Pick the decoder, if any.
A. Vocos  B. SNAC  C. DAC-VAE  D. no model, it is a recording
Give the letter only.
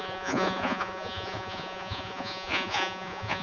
A